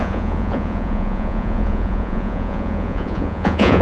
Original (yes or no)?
no